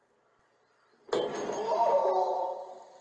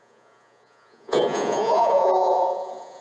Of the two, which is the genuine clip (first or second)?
first